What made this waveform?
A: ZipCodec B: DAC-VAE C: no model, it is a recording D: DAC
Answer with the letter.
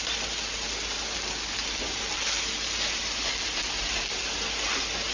C